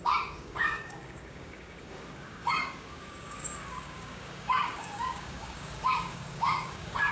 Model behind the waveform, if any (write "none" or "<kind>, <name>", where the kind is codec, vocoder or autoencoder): codec, DAC